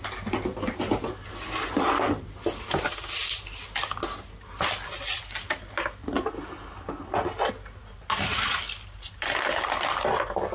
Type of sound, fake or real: real